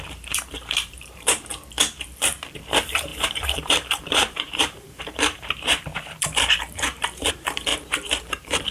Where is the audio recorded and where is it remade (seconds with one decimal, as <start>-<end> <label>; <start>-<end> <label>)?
0.0-1.5 remade; 1.5-2.2 recorded; 2.2-8.7 remade

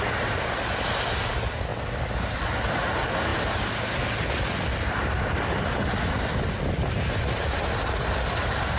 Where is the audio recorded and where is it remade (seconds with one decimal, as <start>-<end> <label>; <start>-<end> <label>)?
0.0-8.8 recorded

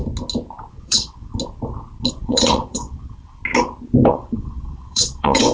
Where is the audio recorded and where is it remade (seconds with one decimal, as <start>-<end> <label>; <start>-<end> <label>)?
0.0-0.7 recorded; 0.7-1.3 remade; 1.3-2.1 recorded; 2.1-3.4 remade; 3.4-4.1 recorded; 4.1-5.5 remade

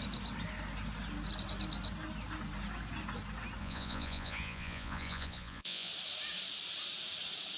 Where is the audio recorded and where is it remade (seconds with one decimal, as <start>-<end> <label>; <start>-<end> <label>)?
0.0-3.6 recorded; 3.6-5.9 remade; 5.9-7.6 recorded

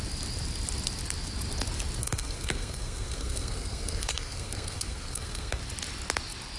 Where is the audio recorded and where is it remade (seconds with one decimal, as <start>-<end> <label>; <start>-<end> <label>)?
0.0-2.0 recorded; 2.0-5.6 remade; 5.6-6.6 recorded

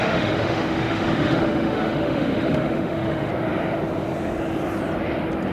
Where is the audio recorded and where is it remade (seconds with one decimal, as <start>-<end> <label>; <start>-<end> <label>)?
0.0-3.3 remade; 3.3-5.5 recorded

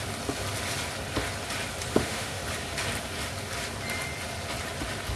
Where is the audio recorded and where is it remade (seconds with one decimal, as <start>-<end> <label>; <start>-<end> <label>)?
0.0-1.9 recorded; 1.9-2.4 remade; 2.4-5.2 recorded